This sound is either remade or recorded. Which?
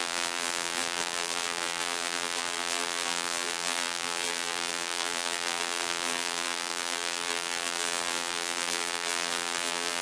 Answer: remade